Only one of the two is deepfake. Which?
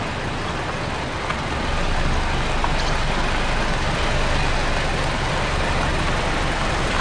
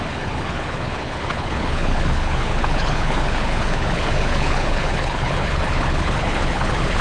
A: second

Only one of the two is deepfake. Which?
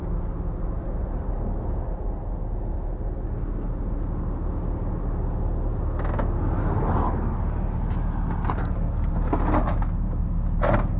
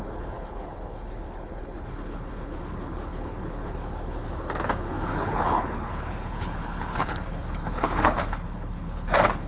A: second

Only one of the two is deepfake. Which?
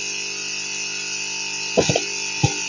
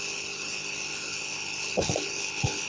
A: second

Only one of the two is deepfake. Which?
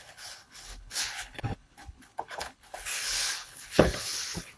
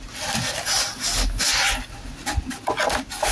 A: first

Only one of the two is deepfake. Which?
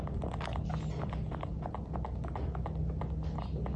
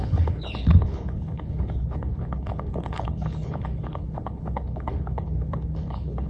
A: second